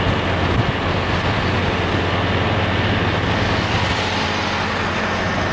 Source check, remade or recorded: recorded